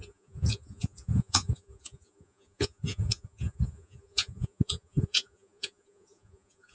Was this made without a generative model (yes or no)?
no